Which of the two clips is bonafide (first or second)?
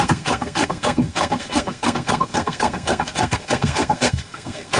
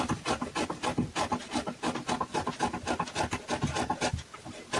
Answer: second